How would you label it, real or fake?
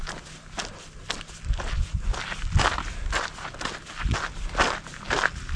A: real